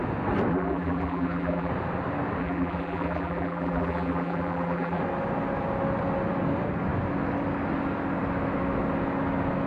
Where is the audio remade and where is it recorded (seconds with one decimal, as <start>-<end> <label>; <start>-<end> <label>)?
0.0-0.5 recorded; 0.5-1.7 remade; 1.7-2.4 recorded; 2.4-5.0 remade; 5.0-9.7 recorded